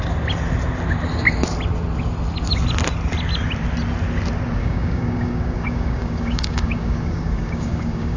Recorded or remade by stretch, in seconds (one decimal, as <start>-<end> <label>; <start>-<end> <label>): 0.0-4.6 recorded; 4.6-8.2 remade